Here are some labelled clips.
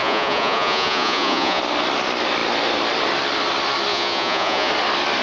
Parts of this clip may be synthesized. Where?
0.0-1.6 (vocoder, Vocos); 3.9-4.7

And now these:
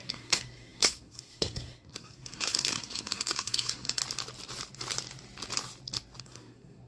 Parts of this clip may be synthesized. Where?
0.0-4.0 (codec, SNAC); 6.2-6.9